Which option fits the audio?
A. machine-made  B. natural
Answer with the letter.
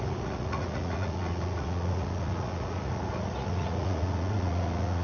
A